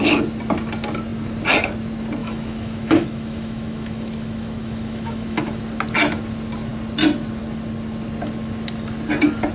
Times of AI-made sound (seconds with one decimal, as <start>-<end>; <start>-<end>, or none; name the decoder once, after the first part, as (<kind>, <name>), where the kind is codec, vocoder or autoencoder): 2.2-5.6 (autoencoder, DAC-VAE)